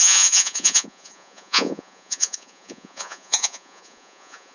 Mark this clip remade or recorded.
remade